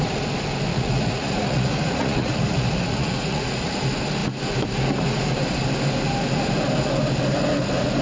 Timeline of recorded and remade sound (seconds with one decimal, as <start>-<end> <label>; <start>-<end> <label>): 0.0-0.7 recorded; 0.7-3.8 remade; 3.8-8.0 recorded